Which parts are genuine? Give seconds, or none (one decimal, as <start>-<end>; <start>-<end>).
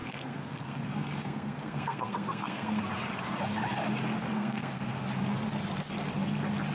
2.8-4.2; 4.9-6.7